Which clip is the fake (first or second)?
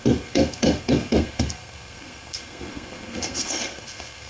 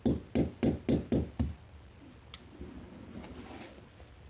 first